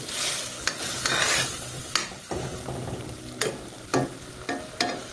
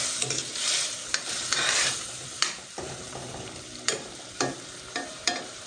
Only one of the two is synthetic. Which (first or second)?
second